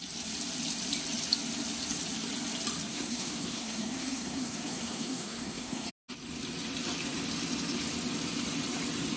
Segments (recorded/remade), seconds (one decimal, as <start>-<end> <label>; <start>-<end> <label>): 0.0-2.9 recorded; 2.9-5.9 remade; 5.9-9.2 recorded